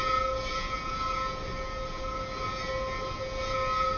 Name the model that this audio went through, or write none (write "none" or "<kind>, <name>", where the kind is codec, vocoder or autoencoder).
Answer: none